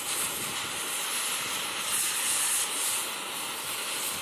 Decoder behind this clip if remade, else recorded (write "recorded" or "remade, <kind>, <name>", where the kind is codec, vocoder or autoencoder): recorded